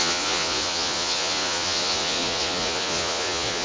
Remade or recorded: remade